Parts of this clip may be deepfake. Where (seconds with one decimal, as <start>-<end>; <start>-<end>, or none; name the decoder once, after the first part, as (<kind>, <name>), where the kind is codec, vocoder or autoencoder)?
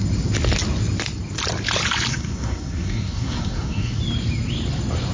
2.1-4.0 (codec, SNAC)